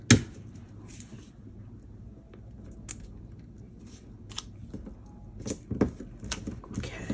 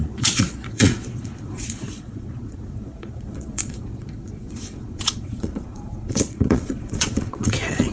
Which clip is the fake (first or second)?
second